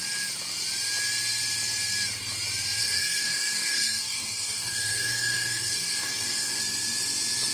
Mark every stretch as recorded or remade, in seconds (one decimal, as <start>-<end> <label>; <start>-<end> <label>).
0.0-2.8 recorded; 2.8-6.6 remade; 6.6-7.5 recorded